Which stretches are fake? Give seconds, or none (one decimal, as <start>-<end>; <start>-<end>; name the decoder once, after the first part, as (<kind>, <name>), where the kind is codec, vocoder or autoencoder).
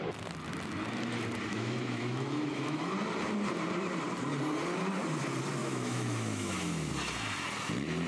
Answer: 1.5-2.9 (autoencoder, DAC-VAE); 5.6-6.9